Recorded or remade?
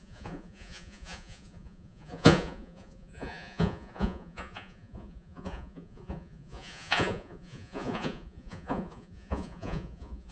remade